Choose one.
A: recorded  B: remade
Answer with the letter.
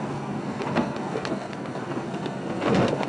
B